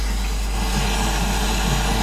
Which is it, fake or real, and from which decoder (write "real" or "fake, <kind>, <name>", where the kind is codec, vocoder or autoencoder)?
real